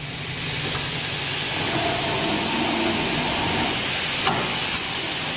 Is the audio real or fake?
fake